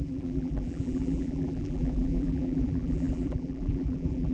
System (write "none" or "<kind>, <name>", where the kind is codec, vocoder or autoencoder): vocoder, BigVGAN v2